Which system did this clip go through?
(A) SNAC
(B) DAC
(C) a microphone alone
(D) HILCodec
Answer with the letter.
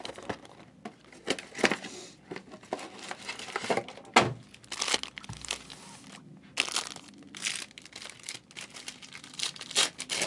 C